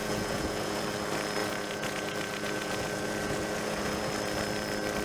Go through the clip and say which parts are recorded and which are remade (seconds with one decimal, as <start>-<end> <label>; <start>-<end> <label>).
0.0-0.8 remade; 0.8-1.4 recorded; 1.4-4.1 remade; 4.1-5.0 recorded